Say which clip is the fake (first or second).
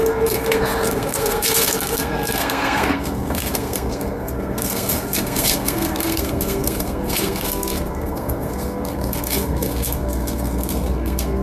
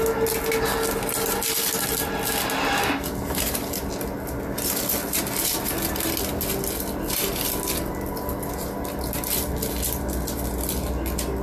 first